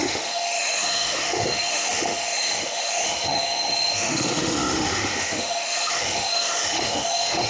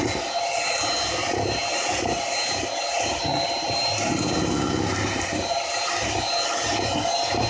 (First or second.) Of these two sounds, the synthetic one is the first